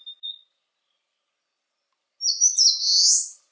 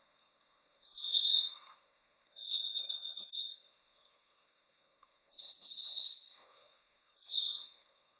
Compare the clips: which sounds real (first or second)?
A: first